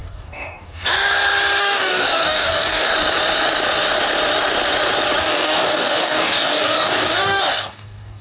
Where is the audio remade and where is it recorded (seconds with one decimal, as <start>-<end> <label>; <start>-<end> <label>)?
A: 0.0-0.9 remade; 0.9-1.6 recorded; 1.6-2.9 remade; 2.9-5.2 recorded; 5.2-8.2 remade